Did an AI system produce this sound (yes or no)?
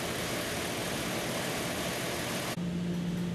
no